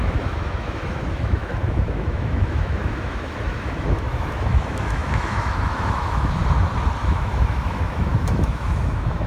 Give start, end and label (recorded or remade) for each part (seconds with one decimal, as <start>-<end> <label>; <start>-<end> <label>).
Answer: 0.0-6.4 remade; 6.4-7.0 recorded; 7.0-9.3 remade